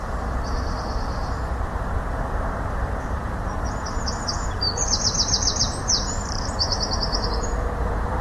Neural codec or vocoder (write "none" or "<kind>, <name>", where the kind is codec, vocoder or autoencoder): vocoder, BigVGAN v2